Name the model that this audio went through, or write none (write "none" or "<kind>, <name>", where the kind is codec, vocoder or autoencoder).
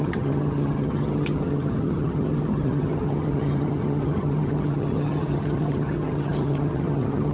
vocoder, HiFi-GAN